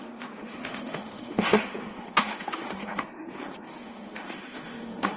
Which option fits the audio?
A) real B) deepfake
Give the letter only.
B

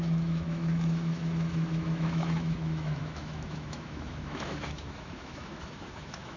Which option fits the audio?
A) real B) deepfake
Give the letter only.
B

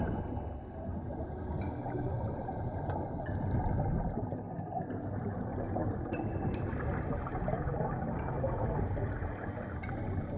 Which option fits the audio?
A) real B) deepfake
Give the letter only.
A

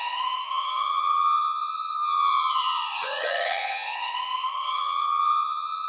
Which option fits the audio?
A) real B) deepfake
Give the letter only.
B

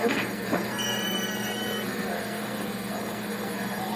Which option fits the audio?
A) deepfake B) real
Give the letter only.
A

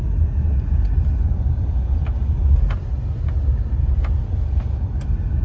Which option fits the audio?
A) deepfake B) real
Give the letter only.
B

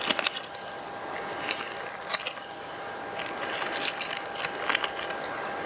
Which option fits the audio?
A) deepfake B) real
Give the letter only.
B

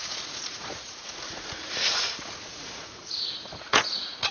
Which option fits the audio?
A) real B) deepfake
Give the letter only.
B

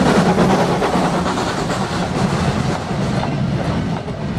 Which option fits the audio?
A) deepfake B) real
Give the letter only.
B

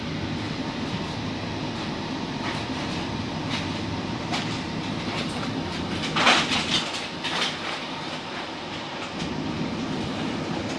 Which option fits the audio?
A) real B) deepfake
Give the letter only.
A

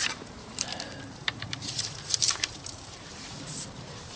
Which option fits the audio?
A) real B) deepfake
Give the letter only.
B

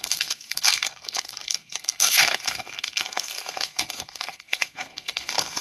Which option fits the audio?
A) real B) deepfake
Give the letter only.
B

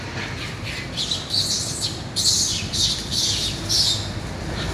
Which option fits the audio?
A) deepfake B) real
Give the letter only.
A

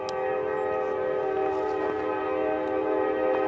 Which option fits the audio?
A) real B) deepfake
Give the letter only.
A